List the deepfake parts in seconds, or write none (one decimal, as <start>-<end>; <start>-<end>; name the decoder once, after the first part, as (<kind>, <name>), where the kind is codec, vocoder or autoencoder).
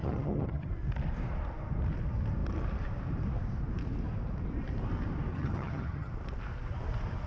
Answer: 0.0-0.7 (vocoder, HiFi-GAN); 5.3-6.1